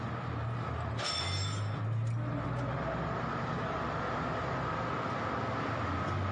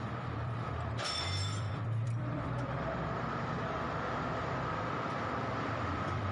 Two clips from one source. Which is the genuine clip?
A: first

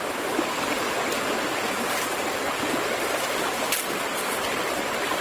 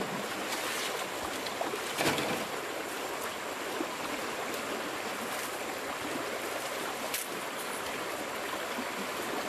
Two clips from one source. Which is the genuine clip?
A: second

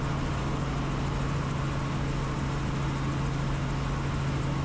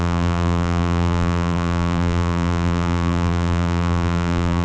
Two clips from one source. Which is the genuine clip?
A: first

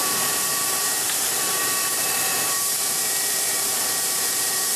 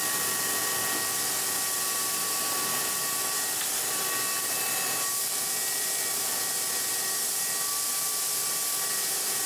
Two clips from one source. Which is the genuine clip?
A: second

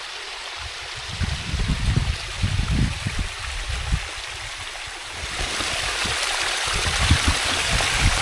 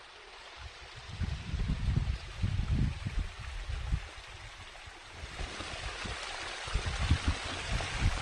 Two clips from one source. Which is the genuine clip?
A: second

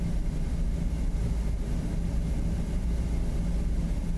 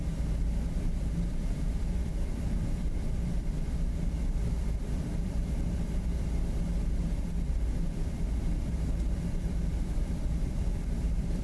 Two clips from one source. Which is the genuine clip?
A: first